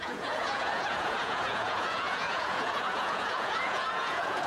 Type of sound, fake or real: fake